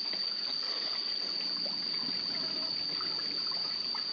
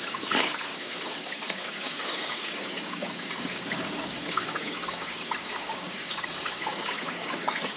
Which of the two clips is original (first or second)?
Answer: first